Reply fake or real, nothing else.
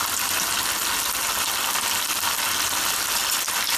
real